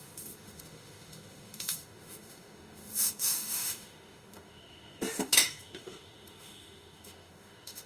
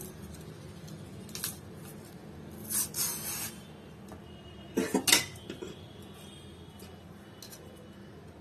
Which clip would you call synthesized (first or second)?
first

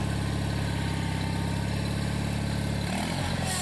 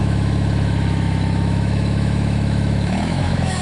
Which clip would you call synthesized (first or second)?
second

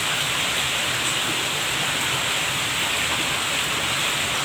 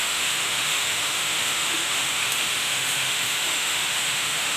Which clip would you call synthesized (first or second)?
second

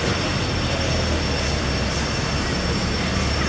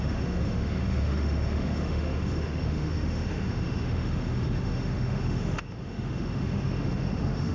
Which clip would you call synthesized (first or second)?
second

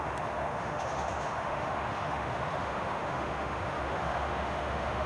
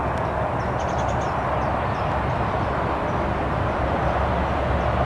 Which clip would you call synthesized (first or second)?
first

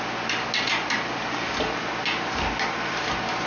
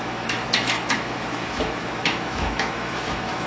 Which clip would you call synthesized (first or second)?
second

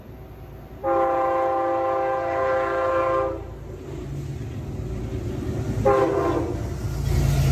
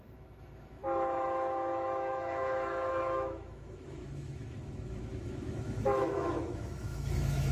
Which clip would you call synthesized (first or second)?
second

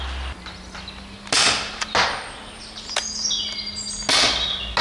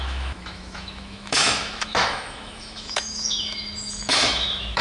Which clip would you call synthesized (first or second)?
second